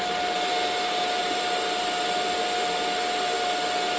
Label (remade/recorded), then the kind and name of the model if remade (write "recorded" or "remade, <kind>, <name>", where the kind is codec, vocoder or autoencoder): recorded